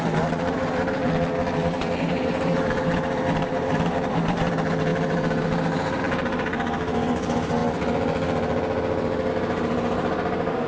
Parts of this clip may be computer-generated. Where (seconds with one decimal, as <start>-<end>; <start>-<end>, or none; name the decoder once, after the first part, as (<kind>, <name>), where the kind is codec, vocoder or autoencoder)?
0.0-1.0 (vocoder, BigVGAN v2); 2.0-7.6; 9.3-10.7